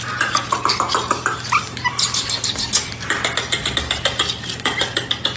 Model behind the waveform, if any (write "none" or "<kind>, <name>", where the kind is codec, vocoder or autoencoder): none